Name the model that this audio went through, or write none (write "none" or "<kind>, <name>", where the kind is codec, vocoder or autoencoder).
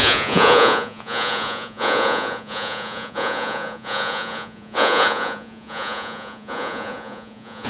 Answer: vocoder, Vocos